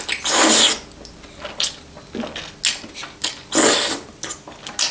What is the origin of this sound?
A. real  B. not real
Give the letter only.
A